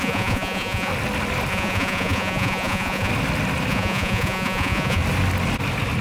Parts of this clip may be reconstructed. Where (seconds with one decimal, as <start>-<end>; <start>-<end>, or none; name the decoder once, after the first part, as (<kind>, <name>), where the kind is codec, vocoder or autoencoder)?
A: 0.0-0.9 (vocoder, Vocos); 1.5-3.1; 3.7-5.0